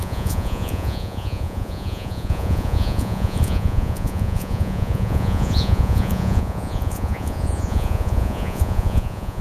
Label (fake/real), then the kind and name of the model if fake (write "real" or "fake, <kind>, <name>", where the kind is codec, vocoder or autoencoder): fake, vocoder, Vocos